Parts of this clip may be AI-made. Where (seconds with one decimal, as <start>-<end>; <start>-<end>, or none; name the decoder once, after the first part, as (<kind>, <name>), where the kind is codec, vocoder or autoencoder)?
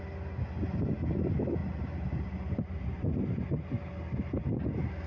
none